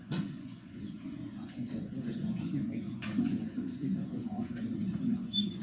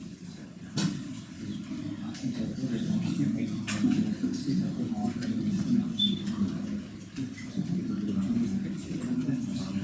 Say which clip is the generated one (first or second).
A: first